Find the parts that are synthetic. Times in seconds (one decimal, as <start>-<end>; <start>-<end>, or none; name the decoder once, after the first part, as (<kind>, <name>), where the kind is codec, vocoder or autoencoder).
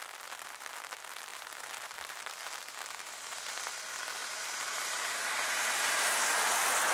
1.3-2.9 (vocoder, BigVGAN v2); 4.2-5.6